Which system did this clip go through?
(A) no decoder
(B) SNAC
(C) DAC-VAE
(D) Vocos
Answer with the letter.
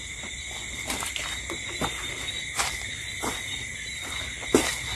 A